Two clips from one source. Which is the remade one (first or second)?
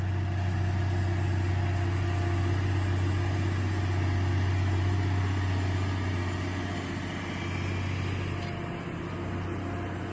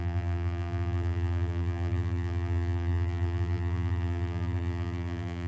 second